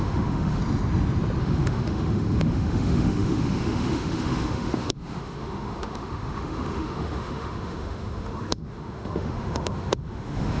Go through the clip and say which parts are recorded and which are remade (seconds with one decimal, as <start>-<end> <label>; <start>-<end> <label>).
0.0-0.6 remade; 0.6-1.4 recorded; 1.4-10.6 remade